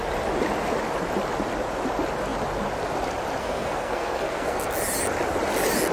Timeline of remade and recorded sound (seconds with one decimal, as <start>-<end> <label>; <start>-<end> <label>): 0.0-3.4 recorded; 3.4-4.7 remade; 4.7-5.9 recorded